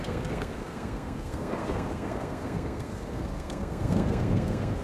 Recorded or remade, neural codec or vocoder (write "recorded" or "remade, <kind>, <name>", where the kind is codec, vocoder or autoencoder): remade, codec, SNAC